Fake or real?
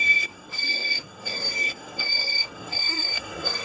fake